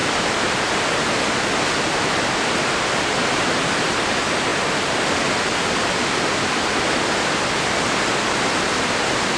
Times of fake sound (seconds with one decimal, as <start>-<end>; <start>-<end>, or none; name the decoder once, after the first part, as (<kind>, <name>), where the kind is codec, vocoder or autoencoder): none